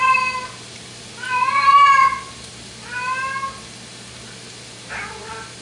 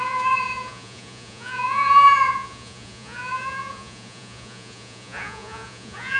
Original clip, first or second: first